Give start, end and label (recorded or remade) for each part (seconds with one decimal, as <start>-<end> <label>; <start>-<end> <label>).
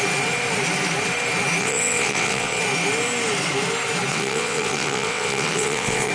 0.0-1.6 recorded; 1.6-2.6 remade; 2.6-4.1 recorded; 4.1-6.1 remade